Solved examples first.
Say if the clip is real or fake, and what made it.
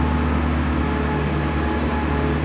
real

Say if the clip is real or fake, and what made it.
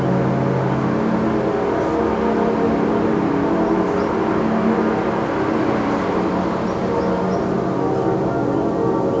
real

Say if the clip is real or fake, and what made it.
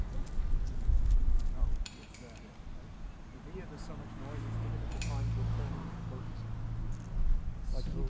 real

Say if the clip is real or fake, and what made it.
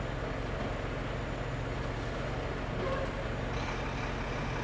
real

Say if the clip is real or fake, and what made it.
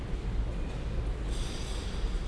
real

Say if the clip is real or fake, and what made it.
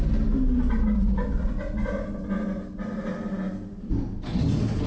real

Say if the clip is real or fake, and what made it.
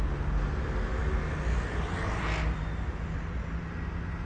real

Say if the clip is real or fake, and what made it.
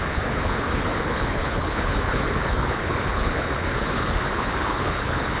fake, codec, HILCodec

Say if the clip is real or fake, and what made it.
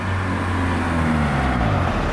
real